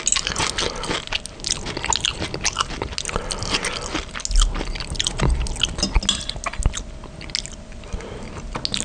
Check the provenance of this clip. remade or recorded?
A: recorded